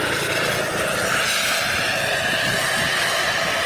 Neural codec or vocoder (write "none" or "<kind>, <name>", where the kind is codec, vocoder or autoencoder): none